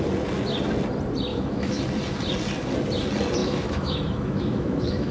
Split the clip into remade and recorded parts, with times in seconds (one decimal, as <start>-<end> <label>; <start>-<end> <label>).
0.0-1.3 recorded; 1.3-1.8 remade; 1.8-3.4 recorded; 3.4-5.1 remade